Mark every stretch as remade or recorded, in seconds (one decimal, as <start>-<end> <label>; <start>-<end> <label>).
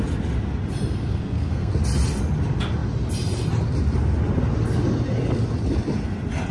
0.0-1.1 recorded; 1.1-1.7 remade; 1.7-6.5 recorded